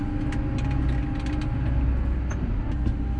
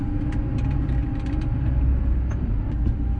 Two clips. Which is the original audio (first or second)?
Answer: first